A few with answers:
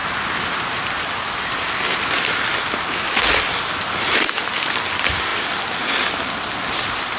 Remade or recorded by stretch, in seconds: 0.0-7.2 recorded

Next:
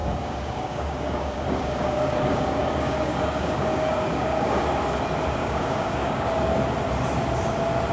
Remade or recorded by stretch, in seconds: 0.0-4.7 remade; 4.7-5.4 recorded; 5.4-6.3 remade; 6.3-7.9 recorded

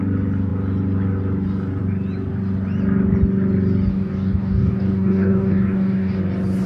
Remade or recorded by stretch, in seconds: 0.0-3.9 recorded; 3.9-6.2 remade; 6.2-6.7 recorded